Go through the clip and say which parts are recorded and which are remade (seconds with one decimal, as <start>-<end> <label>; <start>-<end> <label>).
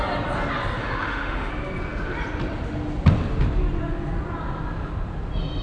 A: 0.0-0.8 recorded; 0.8-1.5 remade; 1.5-5.6 recorded